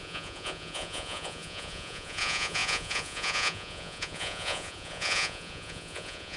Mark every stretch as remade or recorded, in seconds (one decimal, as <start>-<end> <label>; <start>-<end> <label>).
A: 0.0-6.4 remade

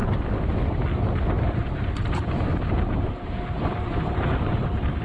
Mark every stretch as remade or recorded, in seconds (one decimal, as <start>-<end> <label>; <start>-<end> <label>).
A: 0.0-1.3 recorded; 1.3-5.0 remade

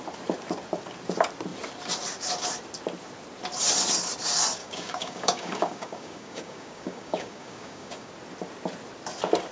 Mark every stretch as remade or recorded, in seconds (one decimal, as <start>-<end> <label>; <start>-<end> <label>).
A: 0.0-4.6 recorded; 4.6-8.1 remade; 8.1-9.5 recorded

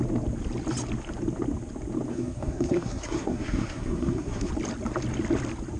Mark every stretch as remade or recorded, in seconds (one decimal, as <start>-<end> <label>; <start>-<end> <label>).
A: 0.0-2.1 recorded; 2.1-4.5 remade; 4.5-5.8 recorded